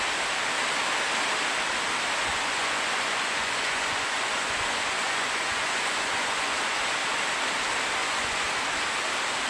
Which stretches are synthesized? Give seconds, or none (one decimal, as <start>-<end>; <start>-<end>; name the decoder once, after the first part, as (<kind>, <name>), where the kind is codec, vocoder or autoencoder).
2.3-6.8 (vocoder, Vocos); 8.0-8.5